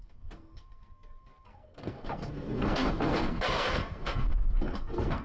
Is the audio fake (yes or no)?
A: yes